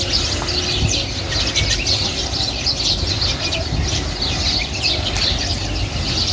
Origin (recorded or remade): recorded